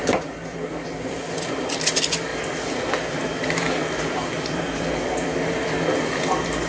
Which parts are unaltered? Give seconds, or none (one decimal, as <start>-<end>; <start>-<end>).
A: none